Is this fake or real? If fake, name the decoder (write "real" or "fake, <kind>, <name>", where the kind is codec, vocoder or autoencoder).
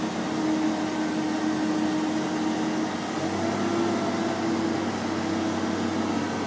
real